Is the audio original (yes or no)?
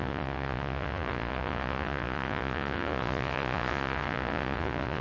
no